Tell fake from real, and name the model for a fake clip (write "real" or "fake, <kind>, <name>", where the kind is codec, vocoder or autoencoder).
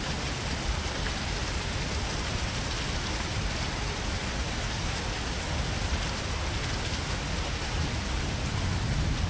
real